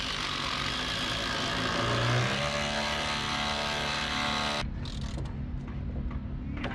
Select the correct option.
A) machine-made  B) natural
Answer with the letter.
B